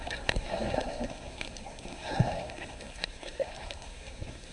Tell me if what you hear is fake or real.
fake